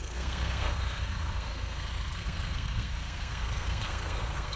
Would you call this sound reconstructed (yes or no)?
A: yes